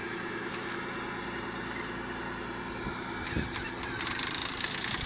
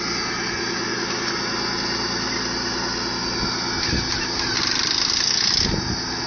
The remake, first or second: first